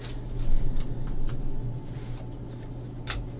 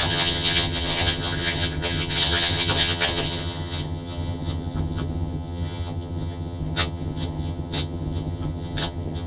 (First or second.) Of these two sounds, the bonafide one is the first